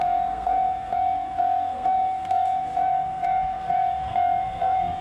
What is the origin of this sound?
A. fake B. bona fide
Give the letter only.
A